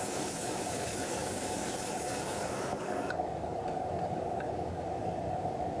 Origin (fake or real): fake